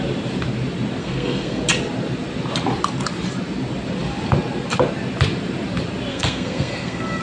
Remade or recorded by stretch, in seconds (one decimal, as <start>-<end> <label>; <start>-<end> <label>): 0.0-1.0 recorded; 1.0-1.6 remade; 1.6-6.1 recorded; 6.1-7.2 remade